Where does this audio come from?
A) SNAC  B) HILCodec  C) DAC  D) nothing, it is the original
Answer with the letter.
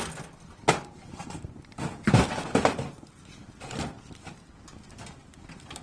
D